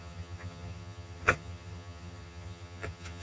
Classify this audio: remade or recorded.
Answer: remade